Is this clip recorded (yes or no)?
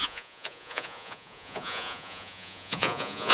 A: no